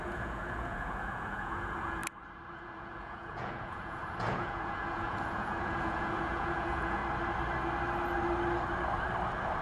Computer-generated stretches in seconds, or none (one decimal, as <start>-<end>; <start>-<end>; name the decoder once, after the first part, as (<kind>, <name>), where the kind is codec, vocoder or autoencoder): 0.0-2.0 (vocoder, Vocos); 2.5-7.0